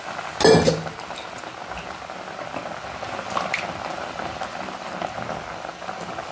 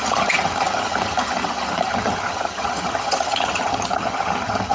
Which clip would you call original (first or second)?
first